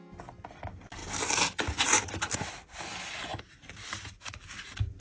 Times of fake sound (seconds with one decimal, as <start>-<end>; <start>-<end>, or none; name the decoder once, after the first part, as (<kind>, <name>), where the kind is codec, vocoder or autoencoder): none